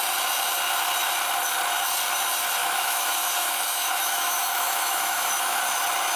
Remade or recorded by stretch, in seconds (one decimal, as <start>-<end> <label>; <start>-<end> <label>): 0.0-2.6 recorded; 2.6-5.6 remade; 5.6-6.2 recorded